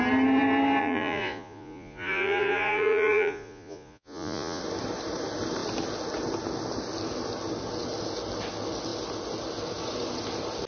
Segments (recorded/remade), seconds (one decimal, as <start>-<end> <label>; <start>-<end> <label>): 0.0-0.8 recorded; 0.8-4.6 remade; 4.6-10.7 recorded